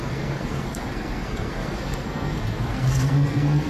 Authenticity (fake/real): fake